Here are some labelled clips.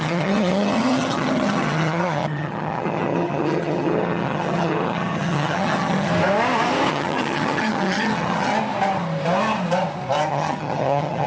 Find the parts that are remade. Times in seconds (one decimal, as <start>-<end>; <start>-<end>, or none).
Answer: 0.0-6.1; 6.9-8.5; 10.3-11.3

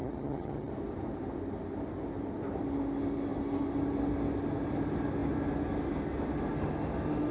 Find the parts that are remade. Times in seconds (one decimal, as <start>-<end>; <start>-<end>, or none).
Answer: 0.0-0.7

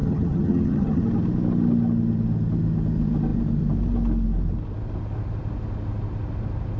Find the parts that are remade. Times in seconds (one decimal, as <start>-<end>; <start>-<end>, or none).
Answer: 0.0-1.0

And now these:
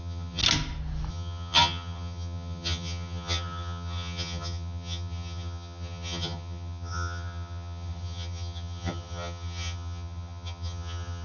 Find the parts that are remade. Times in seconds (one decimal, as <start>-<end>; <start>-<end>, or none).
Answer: 0.0-0.4; 1.1-11.2

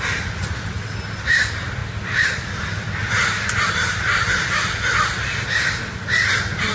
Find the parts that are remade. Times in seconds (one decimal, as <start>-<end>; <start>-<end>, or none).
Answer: none

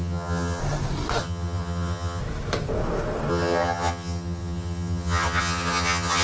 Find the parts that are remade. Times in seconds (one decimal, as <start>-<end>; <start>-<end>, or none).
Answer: 0.0-0.6; 1.2-2.2; 3.3-6.2

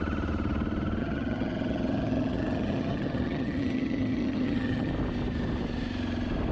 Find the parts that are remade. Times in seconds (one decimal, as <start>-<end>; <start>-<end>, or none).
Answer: 1.0-4.9